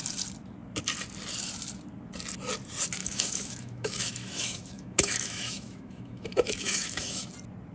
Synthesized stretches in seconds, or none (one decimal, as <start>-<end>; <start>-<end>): 3.0-7.3